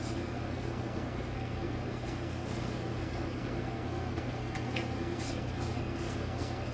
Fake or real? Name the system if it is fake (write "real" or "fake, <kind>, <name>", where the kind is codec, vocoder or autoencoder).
fake, codec, SNAC